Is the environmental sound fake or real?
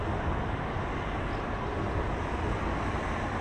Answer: real